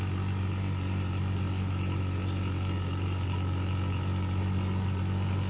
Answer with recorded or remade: recorded